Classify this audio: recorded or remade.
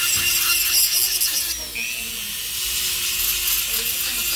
recorded